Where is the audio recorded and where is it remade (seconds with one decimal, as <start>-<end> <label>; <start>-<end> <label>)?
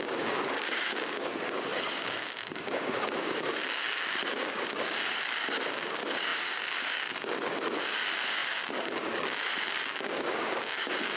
0.0-11.2 remade